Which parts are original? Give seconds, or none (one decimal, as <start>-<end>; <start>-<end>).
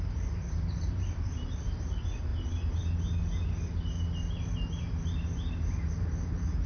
2.3-5.9